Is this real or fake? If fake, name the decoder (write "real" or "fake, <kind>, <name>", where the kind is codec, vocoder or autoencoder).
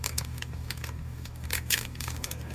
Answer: fake, codec, DAC